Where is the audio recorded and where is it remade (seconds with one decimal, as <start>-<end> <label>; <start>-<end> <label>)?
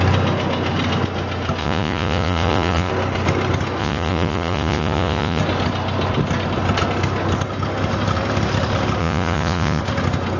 0.0-1.6 recorded; 1.6-2.9 remade; 2.9-3.8 recorded; 3.8-5.4 remade; 5.4-9.0 recorded; 9.0-9.8 remade; 9.8-10.4 recorded